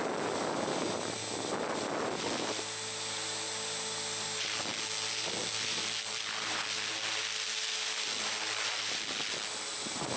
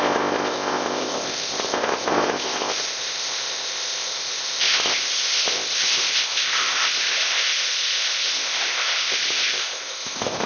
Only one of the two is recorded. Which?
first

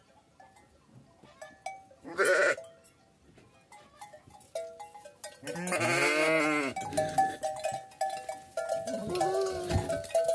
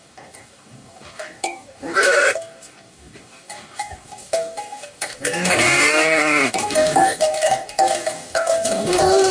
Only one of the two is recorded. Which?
first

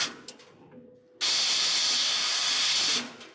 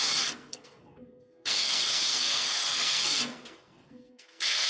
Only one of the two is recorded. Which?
first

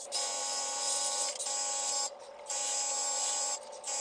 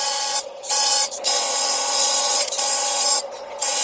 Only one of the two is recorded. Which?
first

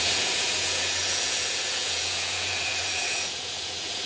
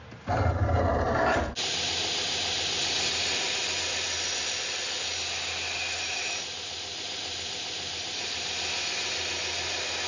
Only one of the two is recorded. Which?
second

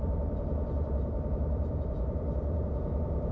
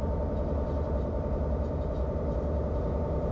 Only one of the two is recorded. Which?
second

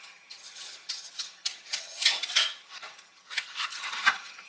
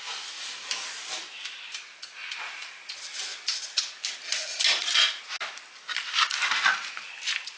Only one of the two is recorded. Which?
second